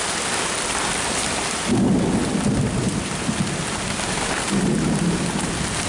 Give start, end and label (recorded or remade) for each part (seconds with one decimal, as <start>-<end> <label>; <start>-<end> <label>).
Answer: 0.0-5.9 recorded